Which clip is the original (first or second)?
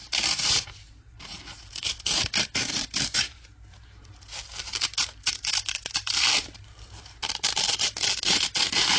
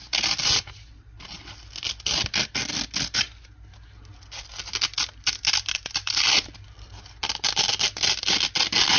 second